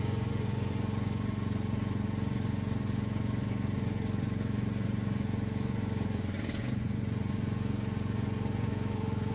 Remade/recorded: remade